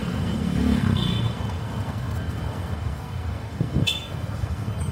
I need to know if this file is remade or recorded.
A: remade